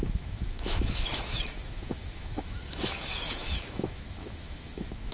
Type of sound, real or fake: fake